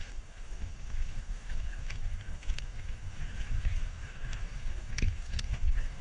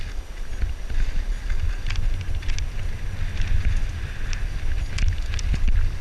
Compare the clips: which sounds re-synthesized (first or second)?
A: first